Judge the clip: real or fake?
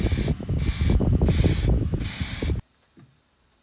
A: real